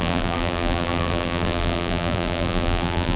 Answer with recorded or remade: remade